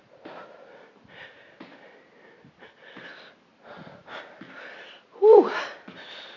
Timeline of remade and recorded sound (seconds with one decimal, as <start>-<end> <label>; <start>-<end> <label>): 0.0-6.4 recorded